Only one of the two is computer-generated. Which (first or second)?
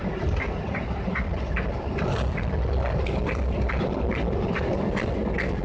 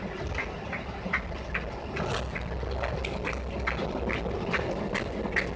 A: first